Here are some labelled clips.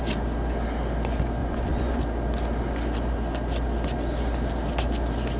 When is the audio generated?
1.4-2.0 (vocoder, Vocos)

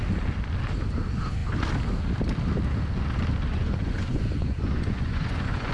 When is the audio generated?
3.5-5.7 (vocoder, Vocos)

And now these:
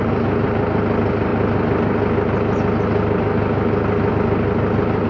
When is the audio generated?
none